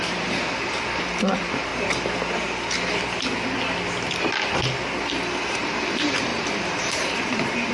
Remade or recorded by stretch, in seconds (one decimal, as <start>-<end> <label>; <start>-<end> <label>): 0.0-1.7 remade; 1.7-5.4 recorded; 5.4-7.7 remade